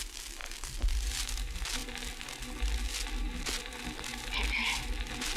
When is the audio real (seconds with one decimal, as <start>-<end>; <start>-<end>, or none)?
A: 0.0-0.4; 1.2-5.4